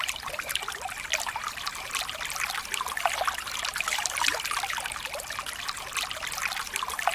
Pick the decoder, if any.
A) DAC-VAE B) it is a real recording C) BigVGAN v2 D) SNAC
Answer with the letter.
B